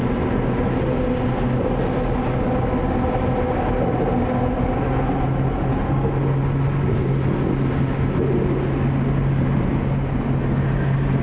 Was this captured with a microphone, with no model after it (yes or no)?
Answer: yes